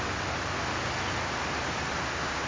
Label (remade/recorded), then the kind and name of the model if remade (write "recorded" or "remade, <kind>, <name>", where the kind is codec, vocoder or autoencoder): recorded